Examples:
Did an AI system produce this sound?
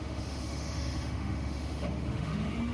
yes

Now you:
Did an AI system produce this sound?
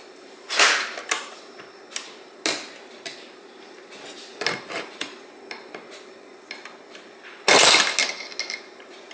no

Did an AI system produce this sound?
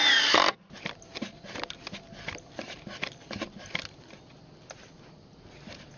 no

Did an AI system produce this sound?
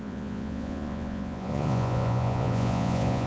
yes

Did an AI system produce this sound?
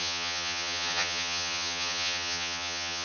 yes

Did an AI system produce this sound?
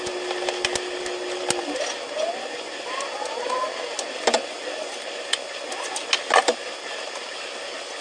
no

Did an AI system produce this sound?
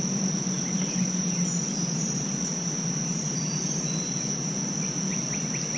no